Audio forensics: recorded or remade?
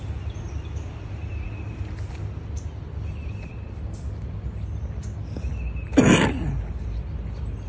recorded